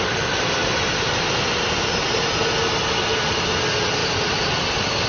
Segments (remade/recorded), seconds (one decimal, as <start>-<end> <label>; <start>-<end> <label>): 0.0-5.1 recorded